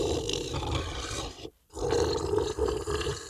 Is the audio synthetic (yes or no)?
no